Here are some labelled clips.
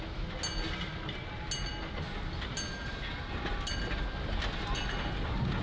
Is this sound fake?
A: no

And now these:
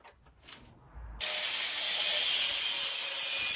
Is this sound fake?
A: no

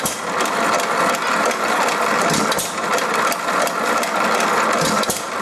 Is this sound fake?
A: no